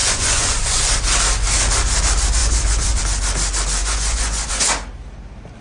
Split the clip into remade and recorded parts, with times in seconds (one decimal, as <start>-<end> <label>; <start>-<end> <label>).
0.0-0.8 remade; 0.8-2.4 recorded; 2.4-3.0 remade; 3.0-3.8 recorded; 3.8-4.6 remade; 4.6-5.6 recorded